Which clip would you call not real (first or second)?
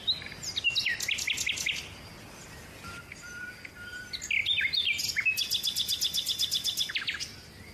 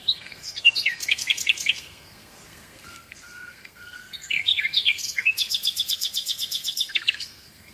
second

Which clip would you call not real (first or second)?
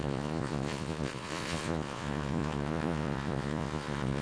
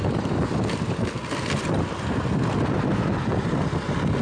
first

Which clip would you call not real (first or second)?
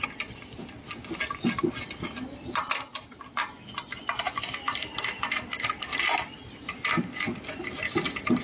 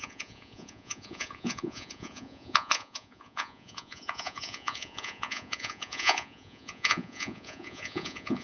second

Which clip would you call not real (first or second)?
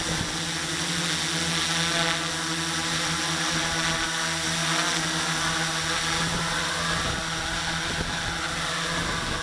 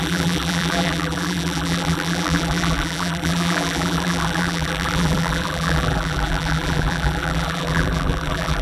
second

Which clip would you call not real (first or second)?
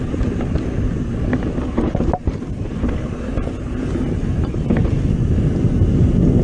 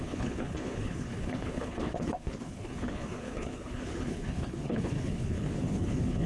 second